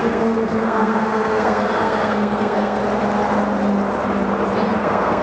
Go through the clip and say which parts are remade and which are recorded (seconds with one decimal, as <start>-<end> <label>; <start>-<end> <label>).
0.0-2.8 remade; 2.8-4.8 recorded; 4.8-5.2 remade

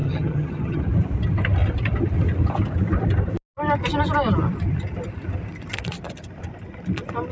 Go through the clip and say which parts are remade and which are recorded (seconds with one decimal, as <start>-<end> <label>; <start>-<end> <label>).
0.0-0.8 remade; 0.8-7.3 recorded

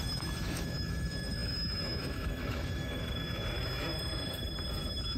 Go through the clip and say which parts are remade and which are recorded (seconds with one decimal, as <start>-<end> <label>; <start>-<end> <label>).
0.0-3.9 remade; 3.9-4.7 recorded; 4.7-5.2 remade

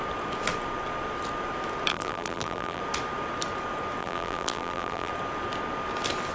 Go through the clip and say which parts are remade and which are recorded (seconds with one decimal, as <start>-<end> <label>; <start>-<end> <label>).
0.0-1.9 recorded; 1.9-2.8 remade; 2.8-4.0 recorded; 4.0-5.1 remade; 5.1-6.3 recorded

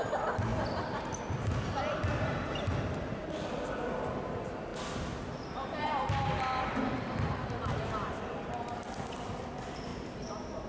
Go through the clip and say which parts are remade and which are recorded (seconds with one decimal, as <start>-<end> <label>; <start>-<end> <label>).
0.0-9.9 recorded; 9.9-10.7 remade